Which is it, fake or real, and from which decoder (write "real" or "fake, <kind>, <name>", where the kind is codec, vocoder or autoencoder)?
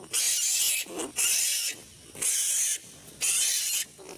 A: real